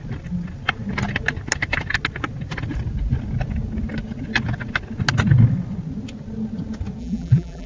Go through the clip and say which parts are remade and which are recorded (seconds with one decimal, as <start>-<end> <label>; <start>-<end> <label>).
0.0-7.0 recorded; 7.0-7.7 remade